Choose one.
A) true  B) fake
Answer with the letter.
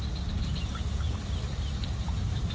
A